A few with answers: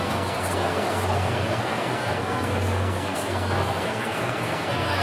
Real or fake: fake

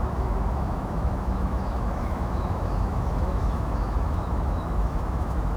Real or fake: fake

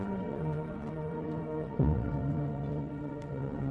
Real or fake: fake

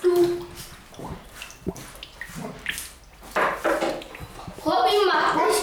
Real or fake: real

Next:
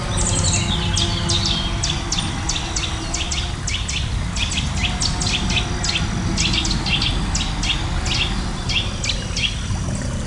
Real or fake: real